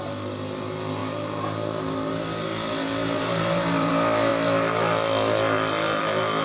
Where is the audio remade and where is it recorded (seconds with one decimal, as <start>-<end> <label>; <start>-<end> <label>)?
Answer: 0.0-3.0 recorded; 3.0-3.9 remade; 3.9-6.4 recorded